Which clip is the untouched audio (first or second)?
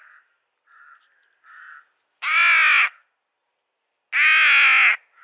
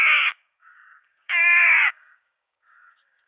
first